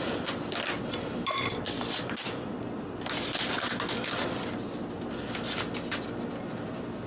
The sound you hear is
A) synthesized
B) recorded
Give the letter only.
B